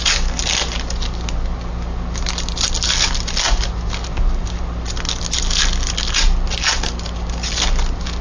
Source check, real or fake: real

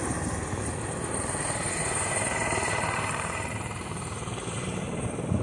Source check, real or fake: fake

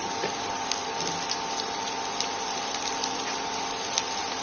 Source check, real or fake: fake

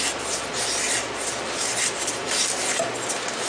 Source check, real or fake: real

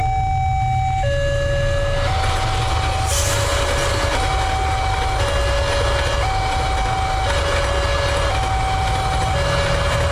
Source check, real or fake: real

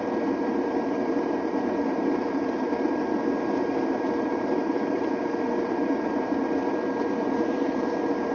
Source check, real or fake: fake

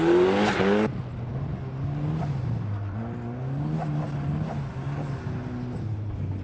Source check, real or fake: real